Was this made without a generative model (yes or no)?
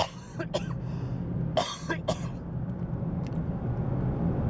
yes